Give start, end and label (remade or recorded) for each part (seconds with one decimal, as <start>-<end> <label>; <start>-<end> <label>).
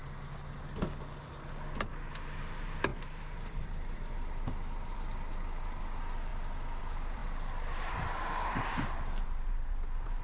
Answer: 0.0-1.9 recorded; 1.9-6.3 remade; 6.3-6.8 recorded; 6.8-10.2 remade